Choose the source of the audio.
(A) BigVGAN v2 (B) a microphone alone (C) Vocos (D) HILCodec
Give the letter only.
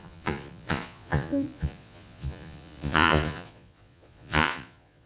C